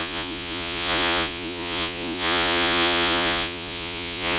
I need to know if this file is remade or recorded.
remade